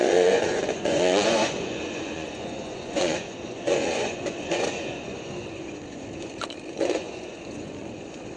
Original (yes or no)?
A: no